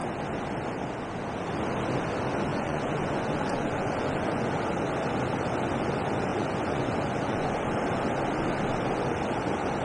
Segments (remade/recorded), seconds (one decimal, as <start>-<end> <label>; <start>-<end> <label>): 0.0-2.5 recorded; 2.5-4.5 remade; 4.5-6.3 recorded; 6.3-7.5 remade; 7.5-9.8 recorded